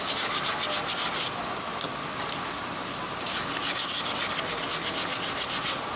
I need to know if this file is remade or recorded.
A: recorded